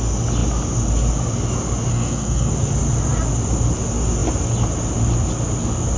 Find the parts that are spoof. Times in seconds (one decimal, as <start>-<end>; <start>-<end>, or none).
1.9-2.5